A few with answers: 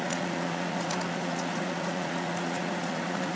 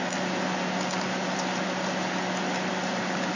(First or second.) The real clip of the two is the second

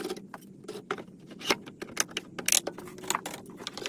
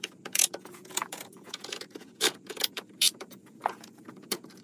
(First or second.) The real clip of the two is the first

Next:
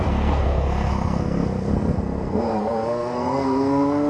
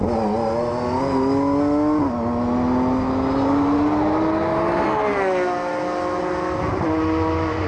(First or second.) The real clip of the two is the second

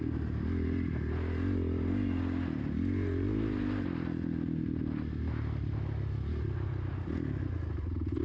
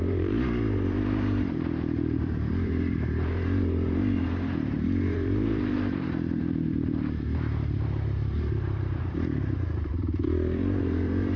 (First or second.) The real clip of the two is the first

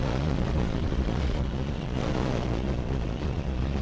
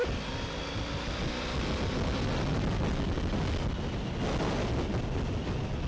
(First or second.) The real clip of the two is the second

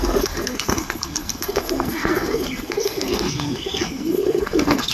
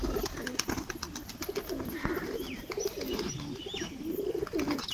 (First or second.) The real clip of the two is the second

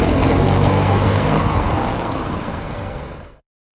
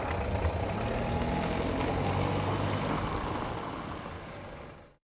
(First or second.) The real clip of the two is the second